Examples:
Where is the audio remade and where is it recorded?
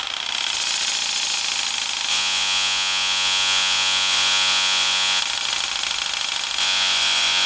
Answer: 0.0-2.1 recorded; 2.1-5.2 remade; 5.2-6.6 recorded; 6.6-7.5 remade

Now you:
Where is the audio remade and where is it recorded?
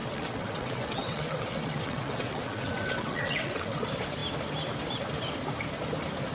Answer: 0.0-3.8 remade; 3.8-6.3 recorded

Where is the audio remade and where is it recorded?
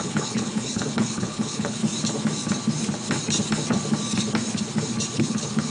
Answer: 0.0-1.8 remade; 1.8-5.2 recorded; 5.2-5.7 remade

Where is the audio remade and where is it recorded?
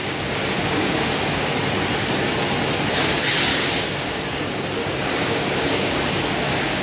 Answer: 0.0-1.5 remade; 1.5-3.5 recorded; 3.5-4.2 remade; 4.2-4.8 recorded; 4.8-6.8 remade